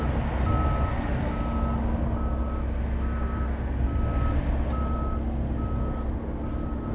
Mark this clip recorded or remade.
recorded